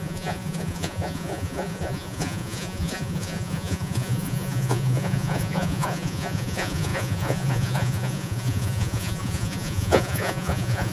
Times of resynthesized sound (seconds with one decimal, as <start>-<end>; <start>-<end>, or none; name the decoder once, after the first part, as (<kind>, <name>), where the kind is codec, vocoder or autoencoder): 0.0-10.9 (vocoder, Vocos)